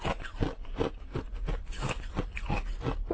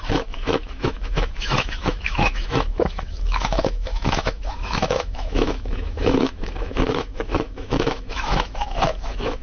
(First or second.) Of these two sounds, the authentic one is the first